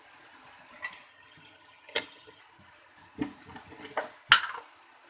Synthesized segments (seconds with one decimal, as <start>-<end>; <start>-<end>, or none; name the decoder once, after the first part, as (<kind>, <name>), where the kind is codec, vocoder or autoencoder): 1.1-2.4 (vocoder, HiFi-GAN)